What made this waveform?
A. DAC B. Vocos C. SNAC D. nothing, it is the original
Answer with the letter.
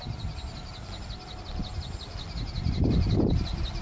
D